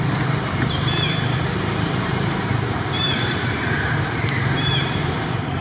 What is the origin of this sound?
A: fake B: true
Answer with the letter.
A